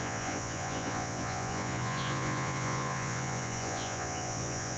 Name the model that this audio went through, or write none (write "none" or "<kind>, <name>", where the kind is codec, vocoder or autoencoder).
vocoder, Vocos